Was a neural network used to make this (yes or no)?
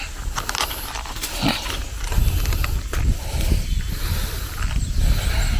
no